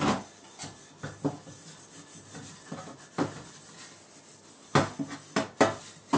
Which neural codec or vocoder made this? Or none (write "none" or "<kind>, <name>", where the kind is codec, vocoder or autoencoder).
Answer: none